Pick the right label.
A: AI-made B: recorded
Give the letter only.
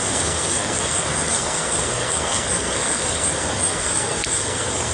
A